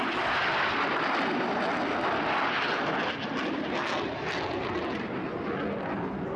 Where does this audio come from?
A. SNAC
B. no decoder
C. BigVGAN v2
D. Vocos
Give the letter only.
B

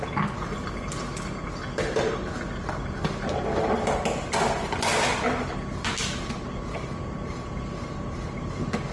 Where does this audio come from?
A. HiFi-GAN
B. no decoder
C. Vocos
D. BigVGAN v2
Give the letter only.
B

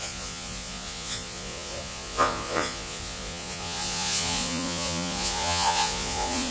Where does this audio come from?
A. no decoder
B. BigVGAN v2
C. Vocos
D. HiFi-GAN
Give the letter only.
C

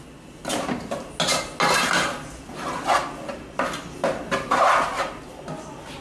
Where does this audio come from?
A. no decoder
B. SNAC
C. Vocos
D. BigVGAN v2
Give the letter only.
A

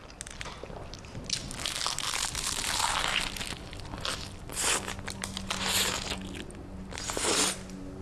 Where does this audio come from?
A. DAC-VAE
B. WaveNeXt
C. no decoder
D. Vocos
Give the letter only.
C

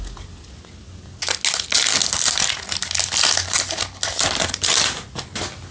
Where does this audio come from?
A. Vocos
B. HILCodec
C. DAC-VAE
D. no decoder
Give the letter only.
D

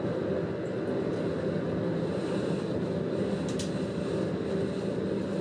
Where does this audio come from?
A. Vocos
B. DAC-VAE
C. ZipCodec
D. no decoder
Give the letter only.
D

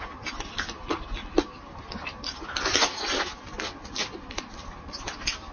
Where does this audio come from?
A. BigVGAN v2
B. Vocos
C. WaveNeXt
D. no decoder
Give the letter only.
D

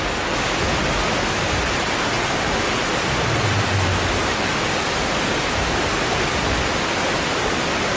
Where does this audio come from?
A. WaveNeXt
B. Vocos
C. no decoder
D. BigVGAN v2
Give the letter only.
C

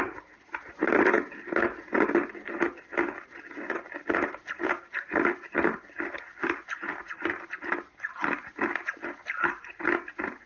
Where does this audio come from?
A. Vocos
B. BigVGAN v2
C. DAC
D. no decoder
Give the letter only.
D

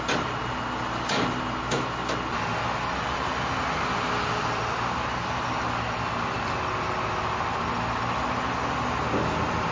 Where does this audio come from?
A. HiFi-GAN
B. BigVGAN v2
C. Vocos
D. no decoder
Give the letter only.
D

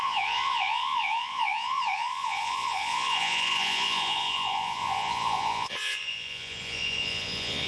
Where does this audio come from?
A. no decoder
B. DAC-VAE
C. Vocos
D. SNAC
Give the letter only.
C